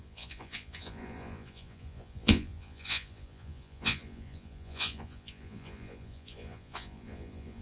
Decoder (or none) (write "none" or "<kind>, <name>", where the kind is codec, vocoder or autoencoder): vocoder, Vocos